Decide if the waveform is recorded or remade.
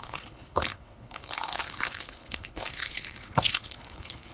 remade